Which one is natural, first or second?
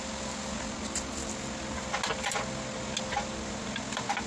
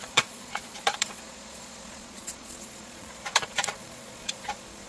first